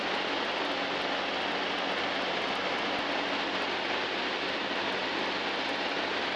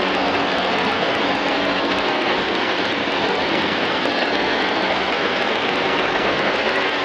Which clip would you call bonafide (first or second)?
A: first